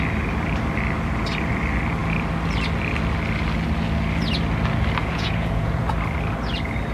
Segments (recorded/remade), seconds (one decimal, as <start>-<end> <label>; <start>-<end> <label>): 0.0-5.0 recorded; 5.0-5.8 remade; 5.8-6.9 recorded